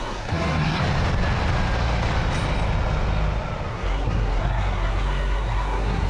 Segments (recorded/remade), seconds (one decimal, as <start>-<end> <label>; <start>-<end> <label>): 0.0-0.8 remade; 0.8-3.7 recorded; 3.7-6.1 remade